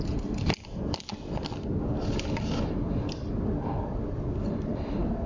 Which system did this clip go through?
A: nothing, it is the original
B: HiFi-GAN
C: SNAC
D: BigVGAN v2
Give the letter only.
A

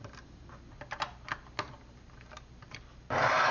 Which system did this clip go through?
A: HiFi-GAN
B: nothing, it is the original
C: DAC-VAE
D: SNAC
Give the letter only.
B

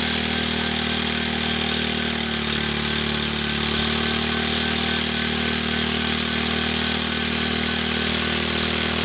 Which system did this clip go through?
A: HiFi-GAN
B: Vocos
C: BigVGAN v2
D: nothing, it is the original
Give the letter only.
D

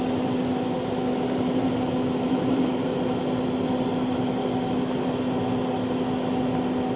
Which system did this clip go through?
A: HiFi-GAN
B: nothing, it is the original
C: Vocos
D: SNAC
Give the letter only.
B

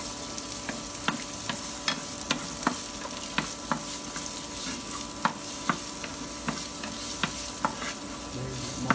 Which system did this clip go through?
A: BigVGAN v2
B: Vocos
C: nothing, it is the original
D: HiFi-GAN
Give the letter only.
C